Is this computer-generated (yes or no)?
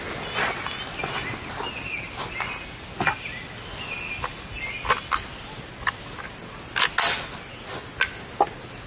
no